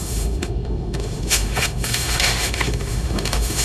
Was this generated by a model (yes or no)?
yes